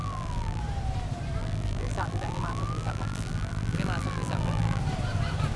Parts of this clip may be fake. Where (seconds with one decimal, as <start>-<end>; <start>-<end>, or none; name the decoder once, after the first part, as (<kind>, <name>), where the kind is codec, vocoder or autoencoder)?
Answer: 0.0-0.6 (vocoder, BigVGAN v2); 1.4-4.8